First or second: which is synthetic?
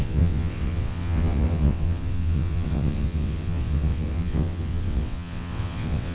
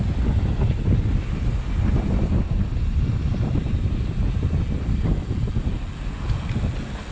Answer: first